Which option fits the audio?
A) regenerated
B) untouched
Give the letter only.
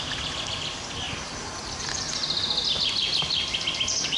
B